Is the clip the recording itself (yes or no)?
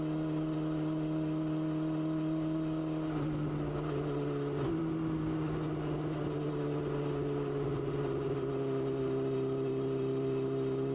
yes